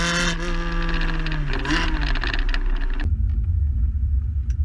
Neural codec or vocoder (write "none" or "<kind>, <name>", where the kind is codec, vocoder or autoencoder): none